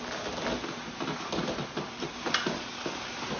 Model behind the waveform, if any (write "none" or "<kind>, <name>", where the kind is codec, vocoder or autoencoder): none